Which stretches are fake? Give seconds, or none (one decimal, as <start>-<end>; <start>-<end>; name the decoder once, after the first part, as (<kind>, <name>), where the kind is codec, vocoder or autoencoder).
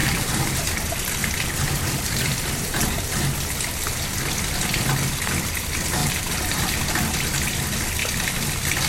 0.0-0.7 (vocoder, BigVGAN v2); 1.2-3.2; 6.0-6.8